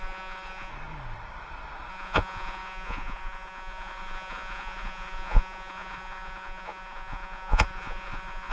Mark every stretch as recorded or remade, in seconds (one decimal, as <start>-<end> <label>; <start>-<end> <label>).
0.0-0.7 remade; 0.7-1.9 recorded; 1.9-8.5 remade